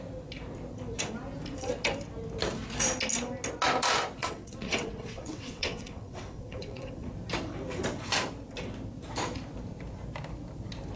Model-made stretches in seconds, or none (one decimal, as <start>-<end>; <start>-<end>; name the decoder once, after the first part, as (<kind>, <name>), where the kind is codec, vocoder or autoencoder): 4.2-7.1 (vocoder, WaveNeXt)

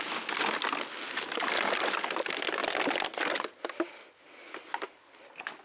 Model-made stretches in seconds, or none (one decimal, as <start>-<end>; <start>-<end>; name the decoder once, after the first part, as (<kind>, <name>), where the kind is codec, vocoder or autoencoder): none

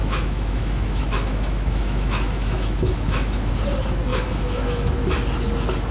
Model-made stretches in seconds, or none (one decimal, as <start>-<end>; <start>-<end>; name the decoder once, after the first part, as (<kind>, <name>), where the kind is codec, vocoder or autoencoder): 0.0-3.5 (autoencoder, DAC-VAE); 4.1-4.8

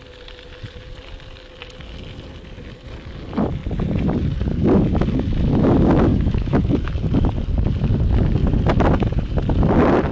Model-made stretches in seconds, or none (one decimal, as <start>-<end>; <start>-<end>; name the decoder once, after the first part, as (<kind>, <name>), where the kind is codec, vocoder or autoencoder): 6.1-6.9 (autoencoder, DAC-VAE)

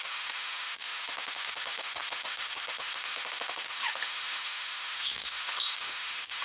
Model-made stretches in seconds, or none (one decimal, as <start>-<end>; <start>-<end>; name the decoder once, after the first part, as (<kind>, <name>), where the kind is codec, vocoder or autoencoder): 0.0-6.4 (autoencoder, DAC-VAE)

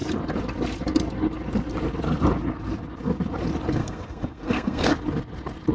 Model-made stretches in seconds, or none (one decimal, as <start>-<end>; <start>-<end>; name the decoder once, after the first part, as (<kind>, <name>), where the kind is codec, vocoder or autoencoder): 3.8-4.9 (codec, SNAC)